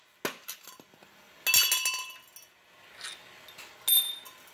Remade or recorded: recorded